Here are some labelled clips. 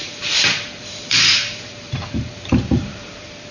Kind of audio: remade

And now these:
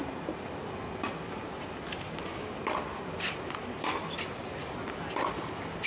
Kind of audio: recorded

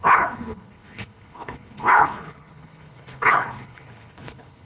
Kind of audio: remade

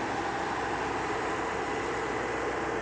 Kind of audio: recorded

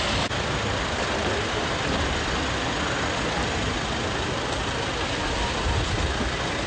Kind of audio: recorded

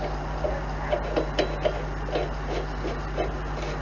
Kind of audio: recorded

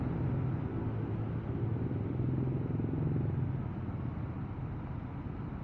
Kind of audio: recorded